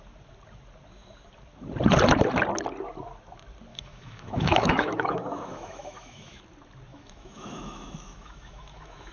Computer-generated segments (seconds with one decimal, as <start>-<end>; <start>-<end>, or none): 3.7-6.4; 6.9-9.1